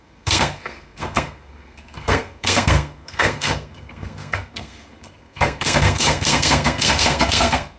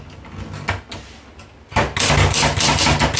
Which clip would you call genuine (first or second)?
second